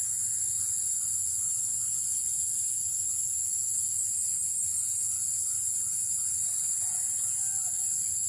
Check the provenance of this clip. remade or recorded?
recorded